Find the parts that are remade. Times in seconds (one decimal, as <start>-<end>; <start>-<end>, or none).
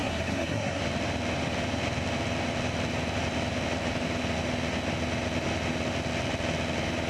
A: 0.0-0.8